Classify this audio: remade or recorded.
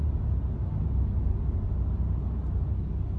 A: recorded